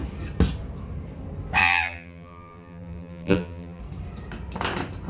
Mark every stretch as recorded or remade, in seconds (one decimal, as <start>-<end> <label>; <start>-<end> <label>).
0.0-1.6 recorded; 1.6-3.8 remade; 3.8-5.1 recorded